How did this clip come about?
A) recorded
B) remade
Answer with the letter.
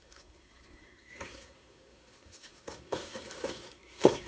B